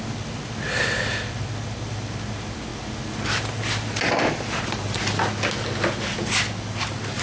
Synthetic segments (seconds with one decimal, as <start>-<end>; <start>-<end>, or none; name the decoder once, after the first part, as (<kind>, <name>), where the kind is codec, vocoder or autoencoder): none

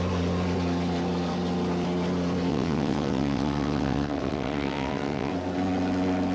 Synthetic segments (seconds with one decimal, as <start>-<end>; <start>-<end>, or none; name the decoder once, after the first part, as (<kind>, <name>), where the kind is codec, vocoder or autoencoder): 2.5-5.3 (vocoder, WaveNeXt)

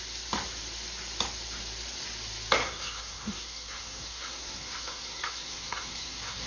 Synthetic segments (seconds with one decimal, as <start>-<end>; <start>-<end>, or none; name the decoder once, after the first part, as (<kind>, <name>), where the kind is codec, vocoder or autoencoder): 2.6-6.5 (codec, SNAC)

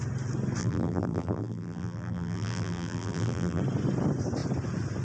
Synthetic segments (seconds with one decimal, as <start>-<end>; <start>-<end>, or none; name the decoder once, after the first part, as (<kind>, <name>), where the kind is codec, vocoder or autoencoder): 0.6-3.6 (vocoder, BigVGAN v2)